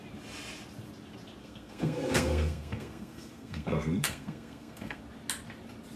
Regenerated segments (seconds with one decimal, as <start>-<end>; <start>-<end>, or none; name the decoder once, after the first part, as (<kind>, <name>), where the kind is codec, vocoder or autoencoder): 1.4-5.0 (codec, SNAC)